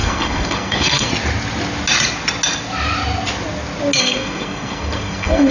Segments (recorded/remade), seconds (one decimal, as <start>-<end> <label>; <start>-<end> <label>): 0.0-1.1 remade; 1.1-4.0 recorded; 4.0-5.5 remade

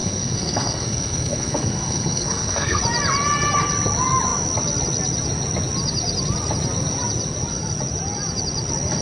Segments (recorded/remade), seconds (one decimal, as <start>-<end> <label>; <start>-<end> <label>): 0.0-2.8 remade; 2.8-9.0 recorded

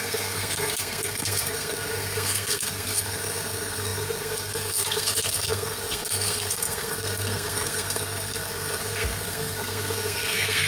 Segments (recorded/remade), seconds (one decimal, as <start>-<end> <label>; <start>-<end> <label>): 0.0-10.7 remade

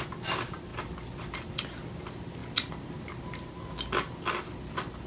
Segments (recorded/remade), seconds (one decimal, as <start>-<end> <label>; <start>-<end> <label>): 0.0-5.1 recorded